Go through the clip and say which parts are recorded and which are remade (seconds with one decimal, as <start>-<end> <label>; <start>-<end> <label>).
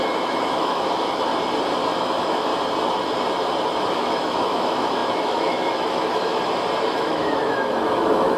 0.0-1.3 remade; 1.3-2.0 recorded; 2.0-2.5 remade; 2.5-3.8 recorded; 3.8-6.4 remade; 6.4-6.9 recorded; 6.9-8.4 remade